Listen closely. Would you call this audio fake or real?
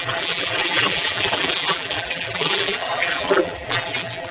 fake